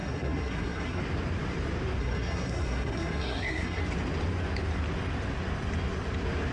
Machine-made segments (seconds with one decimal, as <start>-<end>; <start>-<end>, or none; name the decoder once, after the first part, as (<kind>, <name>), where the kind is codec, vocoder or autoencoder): 0.0-1.0 (codec, SNAC); 2.0-3.8